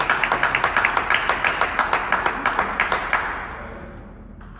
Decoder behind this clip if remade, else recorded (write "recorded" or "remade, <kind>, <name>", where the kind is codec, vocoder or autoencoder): recorded